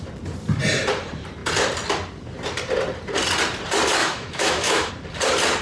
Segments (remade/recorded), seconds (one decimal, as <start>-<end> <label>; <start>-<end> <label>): 0.0-4.0 recorded; 4.0-4.9 remade; 4.9-5.6 recorded

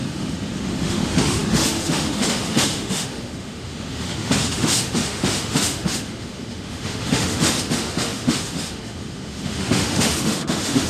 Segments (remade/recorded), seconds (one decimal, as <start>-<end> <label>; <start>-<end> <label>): 0.0-10.9 remade

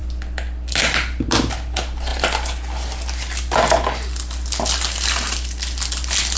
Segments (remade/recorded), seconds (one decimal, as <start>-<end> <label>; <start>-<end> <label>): 0.0-6.4 recorded

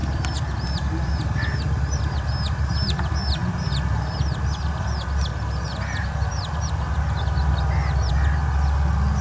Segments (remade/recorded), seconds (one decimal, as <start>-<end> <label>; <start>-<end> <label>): 0.0-9.2 recorded

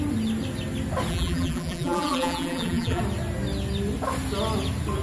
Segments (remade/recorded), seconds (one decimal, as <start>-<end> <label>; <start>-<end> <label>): 0.0-1.1 recorded; 1.1-3.0 remade; 3.0-5.0 recorded